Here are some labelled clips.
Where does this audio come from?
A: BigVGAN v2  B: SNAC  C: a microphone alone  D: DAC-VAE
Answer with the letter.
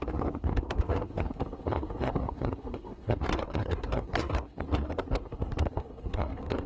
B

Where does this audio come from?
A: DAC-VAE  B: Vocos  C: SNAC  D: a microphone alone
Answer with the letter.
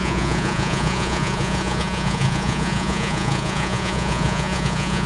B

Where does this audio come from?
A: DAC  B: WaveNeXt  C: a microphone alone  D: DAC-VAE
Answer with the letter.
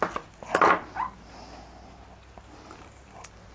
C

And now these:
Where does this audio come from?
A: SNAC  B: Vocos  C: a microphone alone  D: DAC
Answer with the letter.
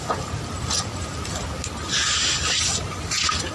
C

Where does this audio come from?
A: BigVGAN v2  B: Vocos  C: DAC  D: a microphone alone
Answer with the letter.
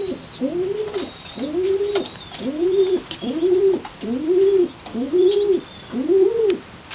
A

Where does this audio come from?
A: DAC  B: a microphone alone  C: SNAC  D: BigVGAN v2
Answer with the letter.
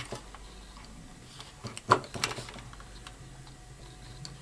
B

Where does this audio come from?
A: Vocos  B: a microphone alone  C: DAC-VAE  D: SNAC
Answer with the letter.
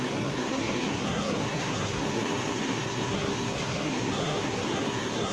D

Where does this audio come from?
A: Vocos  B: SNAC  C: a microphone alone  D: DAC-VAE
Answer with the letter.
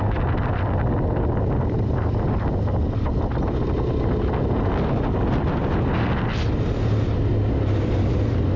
C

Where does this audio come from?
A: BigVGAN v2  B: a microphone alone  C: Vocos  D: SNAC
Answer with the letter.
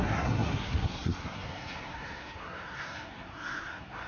D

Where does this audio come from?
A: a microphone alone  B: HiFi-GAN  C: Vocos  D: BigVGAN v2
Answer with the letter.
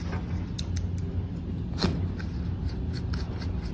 A